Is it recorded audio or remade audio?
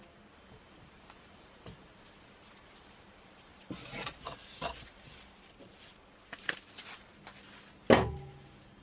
recorded